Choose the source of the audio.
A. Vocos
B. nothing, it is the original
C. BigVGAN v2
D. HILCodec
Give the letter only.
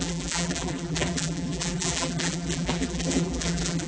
C